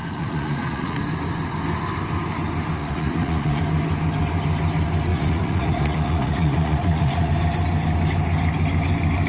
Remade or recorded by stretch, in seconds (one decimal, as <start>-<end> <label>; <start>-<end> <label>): 0.0-1.0 remade; 1.0-2.8 recorded; 2.8-3.6 remade; 3.6-5.1 recorded; 5.1-7.3 remade; 7.3-9.3 recorded